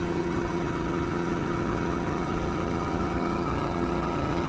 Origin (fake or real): fake